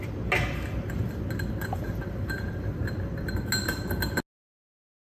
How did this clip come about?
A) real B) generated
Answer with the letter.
A